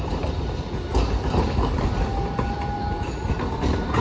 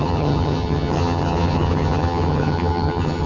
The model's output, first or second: second